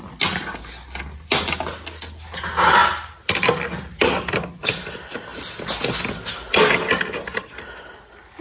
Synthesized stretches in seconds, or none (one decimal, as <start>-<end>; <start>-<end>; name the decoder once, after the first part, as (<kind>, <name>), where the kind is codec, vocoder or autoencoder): none